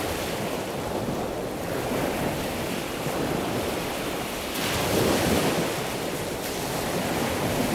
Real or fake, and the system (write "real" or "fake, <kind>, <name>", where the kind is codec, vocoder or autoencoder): real